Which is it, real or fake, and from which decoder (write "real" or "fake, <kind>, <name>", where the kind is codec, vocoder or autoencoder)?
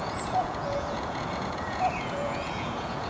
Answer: fake, vocoder, Vocos